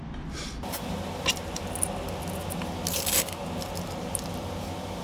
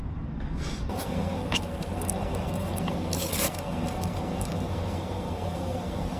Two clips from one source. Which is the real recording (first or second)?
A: first